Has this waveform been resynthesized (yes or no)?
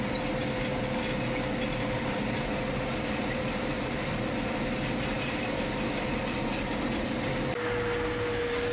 no